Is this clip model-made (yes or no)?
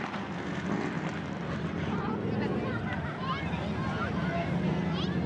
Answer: no